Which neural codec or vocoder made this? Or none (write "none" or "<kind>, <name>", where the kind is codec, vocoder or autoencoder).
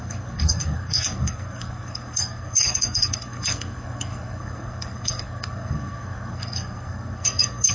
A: codec, SNAC